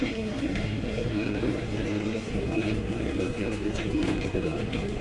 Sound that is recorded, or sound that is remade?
remade